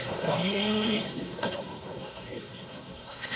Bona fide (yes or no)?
no